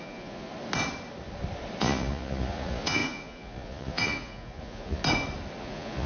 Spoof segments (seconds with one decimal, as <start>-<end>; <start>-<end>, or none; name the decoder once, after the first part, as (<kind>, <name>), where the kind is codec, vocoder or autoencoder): 0.0-0.5 (vocoder, Vocos); 1.8-5.0; 5.6-6.1